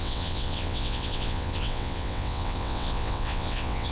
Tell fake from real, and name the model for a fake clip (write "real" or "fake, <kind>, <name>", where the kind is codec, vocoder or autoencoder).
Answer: fake, vocoder, WaveNeXt